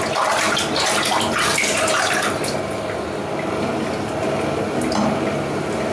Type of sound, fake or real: real